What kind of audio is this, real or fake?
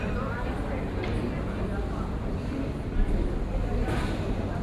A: real